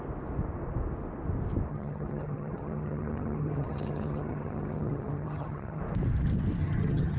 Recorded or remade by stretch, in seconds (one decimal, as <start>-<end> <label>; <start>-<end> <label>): 0.0-1.7 recorded; 1.7-5.8 remade; 5.8-6.6 recorded; 6.6-7.2 remade